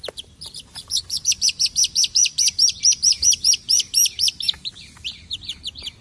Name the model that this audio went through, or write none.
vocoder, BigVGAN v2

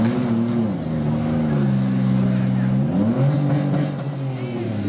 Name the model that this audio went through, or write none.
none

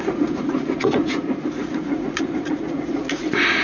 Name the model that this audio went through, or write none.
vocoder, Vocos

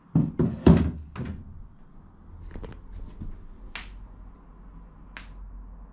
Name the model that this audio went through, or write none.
none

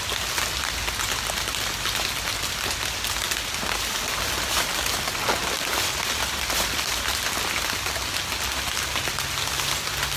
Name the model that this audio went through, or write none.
none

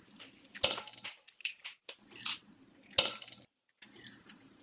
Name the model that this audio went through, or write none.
none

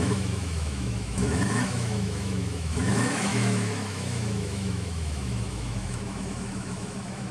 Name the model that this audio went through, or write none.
autoencoder, DAC-VAE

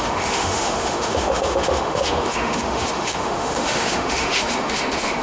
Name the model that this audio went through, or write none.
autoencoder, DAC-VAE